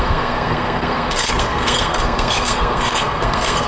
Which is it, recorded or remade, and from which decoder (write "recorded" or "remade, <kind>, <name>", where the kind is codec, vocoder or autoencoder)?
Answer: remade, codec, SNAC